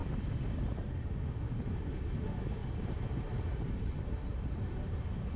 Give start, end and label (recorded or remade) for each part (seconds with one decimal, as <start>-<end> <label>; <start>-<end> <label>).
0.0-2.6 recorded; 2.6-4.6 remade; 4.6-5.4 recorded